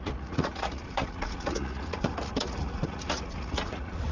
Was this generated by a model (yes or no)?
yes